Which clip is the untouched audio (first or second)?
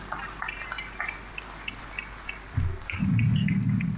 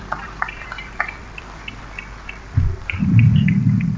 first